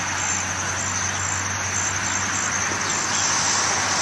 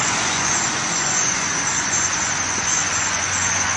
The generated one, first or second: second